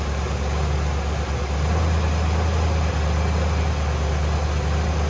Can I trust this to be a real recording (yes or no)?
yes